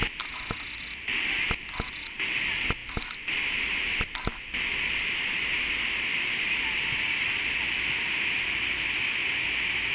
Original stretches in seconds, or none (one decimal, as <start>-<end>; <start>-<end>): 0.0-9.9